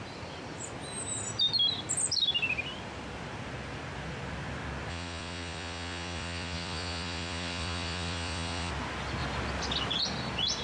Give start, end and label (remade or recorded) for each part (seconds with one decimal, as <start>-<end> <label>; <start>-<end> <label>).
0.0-4.9 recorded; 4.9-8.7 remade; 8.7-10.6 recorded